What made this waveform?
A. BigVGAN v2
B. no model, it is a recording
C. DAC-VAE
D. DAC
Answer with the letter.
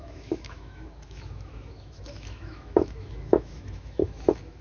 C